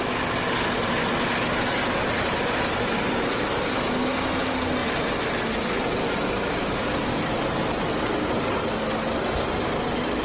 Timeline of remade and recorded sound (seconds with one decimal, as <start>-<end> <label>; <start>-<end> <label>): 0.0-10.2 recorded